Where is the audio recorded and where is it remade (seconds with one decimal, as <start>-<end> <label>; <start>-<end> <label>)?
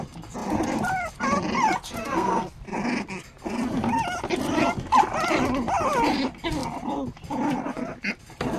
0.0-2.0 recorded; 2.0-2.6 remade; 2.6-8.6 recorded